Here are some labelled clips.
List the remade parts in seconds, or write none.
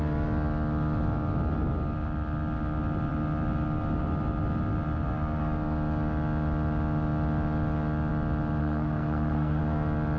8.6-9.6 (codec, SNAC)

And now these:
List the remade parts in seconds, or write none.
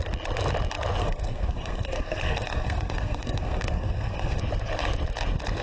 1.0-4.4 (codec, SNAC)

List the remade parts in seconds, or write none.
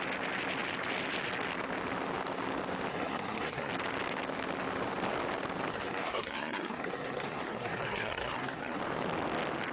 2.9-3.7 (codec, SNAC); 5.7-8.8